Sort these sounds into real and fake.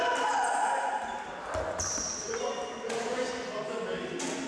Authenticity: real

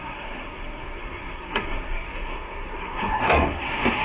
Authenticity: fake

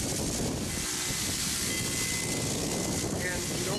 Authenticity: real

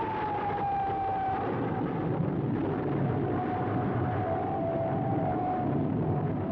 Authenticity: real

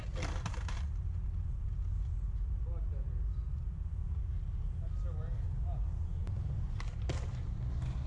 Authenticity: real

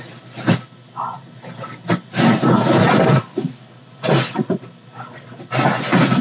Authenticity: real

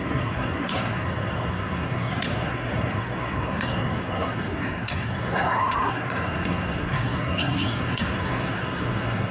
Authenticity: fake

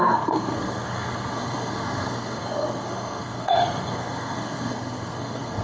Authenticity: fake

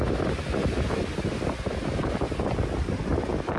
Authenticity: real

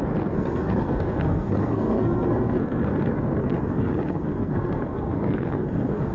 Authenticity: fake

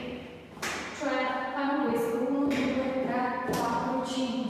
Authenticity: real